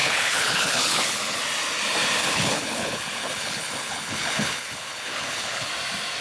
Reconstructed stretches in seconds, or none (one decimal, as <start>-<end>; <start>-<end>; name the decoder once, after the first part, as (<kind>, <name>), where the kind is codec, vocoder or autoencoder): 0.0-1.4 (codec, HILCodec); 2.2-5.7